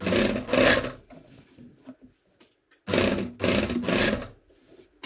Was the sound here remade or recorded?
recorded